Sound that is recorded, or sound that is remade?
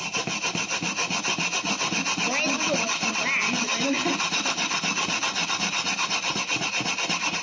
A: recorded